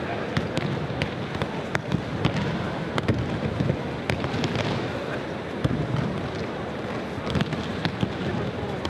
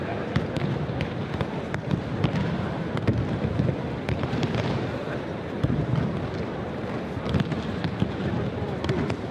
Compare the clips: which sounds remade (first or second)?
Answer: second